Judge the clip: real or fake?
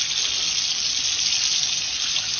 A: real